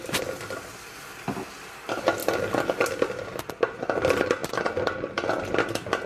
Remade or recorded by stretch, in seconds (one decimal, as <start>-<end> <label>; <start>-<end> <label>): 0.0-6.1 recorded